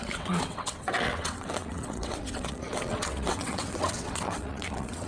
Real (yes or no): no